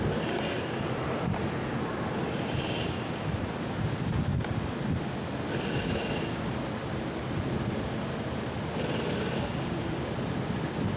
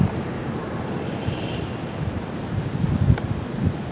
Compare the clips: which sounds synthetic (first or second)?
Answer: second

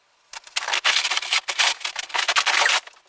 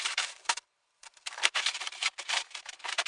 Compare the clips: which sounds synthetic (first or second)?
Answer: second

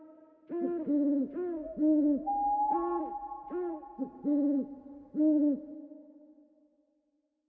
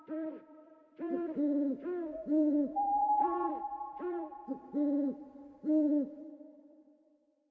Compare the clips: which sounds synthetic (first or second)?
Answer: second